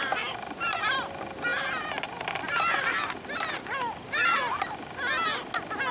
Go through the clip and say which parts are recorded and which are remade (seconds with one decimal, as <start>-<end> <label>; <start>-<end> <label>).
0.0-5.9 recorded

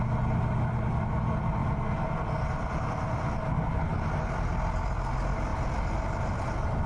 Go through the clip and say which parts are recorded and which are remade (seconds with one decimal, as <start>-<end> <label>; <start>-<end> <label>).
0.0-6.9 recorded

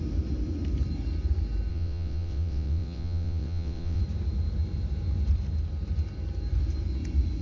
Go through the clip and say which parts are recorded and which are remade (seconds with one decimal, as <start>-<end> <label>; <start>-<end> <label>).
0.0-1.7 recorded; 1.7-4.0 remade; 4.0-7.4 recorded

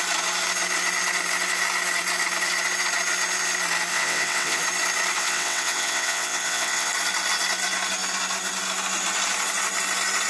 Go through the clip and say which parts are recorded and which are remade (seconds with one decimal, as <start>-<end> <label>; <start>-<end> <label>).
0.0-3.9 recorded; 3.9-4.6 remade; 4.6-5.2 recorded; 5.2-6.9 remade; 6.9-10.3 recorded

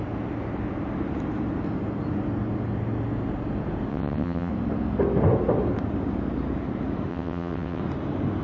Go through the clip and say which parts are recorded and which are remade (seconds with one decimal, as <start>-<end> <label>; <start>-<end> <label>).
0.0-3.9 recorded; 3.9-4.5 remade; 4.5-7.1 recorded; 7.1-7.8 remade; 7.8-8.4 recorded